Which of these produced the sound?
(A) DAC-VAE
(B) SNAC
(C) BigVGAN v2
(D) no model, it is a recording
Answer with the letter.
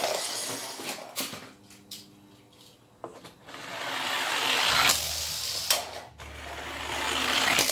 D